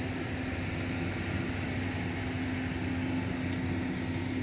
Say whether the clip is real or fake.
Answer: real